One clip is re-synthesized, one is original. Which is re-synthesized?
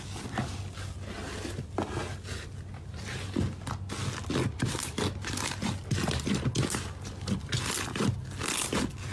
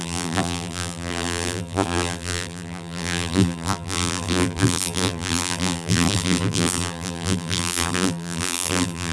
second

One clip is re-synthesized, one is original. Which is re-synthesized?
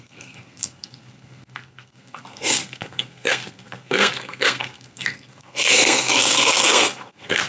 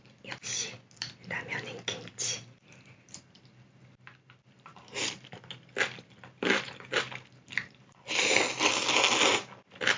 first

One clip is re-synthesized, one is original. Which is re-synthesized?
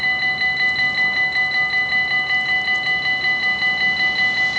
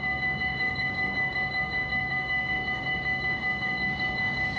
second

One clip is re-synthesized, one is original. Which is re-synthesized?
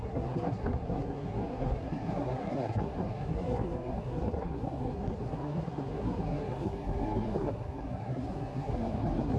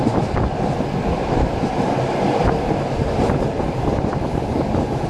first